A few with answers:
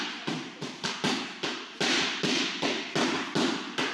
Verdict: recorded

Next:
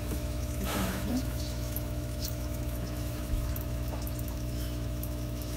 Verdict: remade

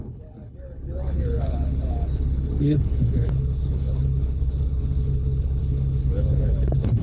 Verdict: remade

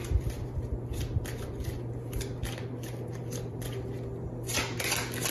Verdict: recorded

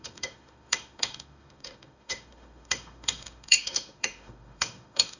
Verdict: remade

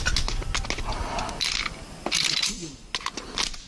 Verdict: recorded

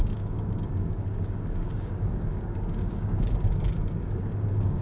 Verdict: remade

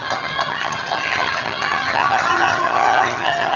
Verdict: remade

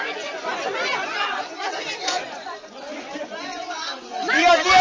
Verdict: remade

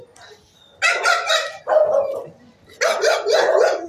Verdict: recorded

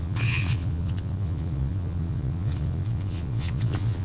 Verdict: remade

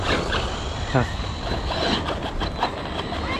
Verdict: recorded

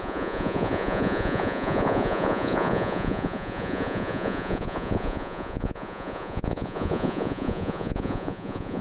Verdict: remade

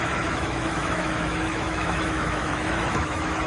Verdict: remade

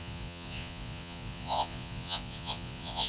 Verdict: remade